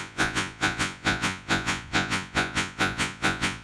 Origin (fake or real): fake